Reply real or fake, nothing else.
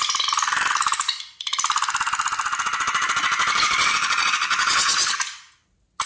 real